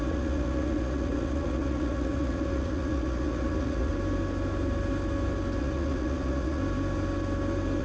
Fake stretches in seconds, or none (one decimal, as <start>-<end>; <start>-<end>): 0.0-3.9; 5.6-6.6